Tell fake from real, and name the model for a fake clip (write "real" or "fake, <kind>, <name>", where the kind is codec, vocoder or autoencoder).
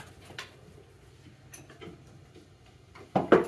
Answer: real